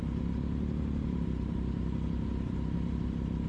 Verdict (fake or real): real